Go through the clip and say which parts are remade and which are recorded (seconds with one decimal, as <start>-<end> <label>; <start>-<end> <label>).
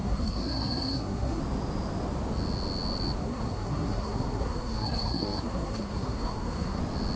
0.0-1.4 remade; 1.4-3.2 recorded; 3.2-6.8 remade; 6.8-7.2 recorded